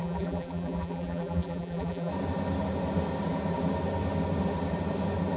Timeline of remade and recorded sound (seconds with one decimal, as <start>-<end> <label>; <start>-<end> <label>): 0.0-2.1 remade; 2.1-5.4 recorded